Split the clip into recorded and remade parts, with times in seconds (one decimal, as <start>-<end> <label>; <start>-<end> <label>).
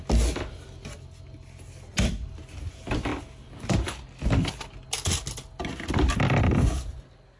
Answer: 0.0-7.4 recorded